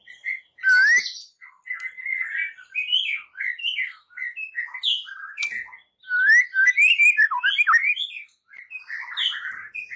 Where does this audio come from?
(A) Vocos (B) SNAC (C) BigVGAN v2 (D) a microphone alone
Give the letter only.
D